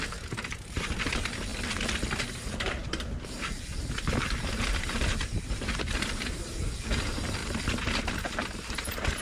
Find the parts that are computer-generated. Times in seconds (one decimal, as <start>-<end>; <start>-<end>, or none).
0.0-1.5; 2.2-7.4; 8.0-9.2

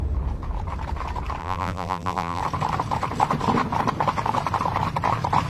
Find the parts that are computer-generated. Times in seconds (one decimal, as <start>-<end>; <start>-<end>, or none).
1.4-2.4

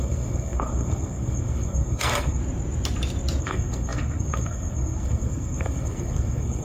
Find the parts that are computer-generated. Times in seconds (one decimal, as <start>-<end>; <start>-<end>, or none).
0.0-2.4; 3.4-6.6

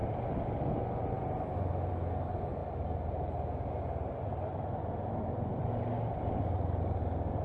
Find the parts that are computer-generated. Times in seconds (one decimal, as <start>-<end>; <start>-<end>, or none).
none

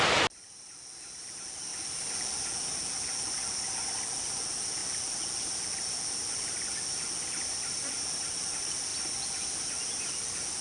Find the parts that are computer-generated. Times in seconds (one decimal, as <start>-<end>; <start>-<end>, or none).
none